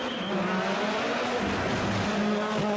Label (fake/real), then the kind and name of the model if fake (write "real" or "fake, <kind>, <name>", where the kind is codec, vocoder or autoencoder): real